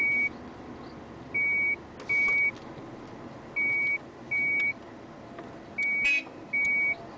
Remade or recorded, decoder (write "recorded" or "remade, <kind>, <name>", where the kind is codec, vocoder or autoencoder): recorded